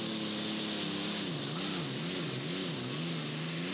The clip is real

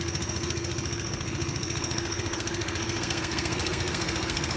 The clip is fake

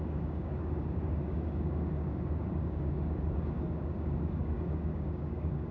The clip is fake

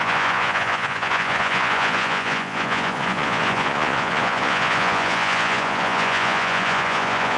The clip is fake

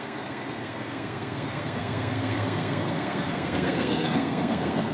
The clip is fake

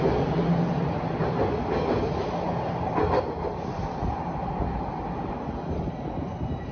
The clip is real